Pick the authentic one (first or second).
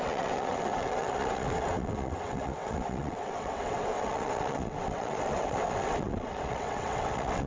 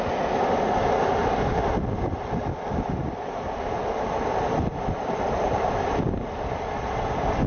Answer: second